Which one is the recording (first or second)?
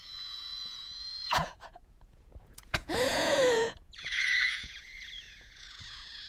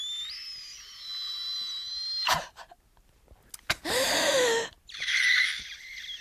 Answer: second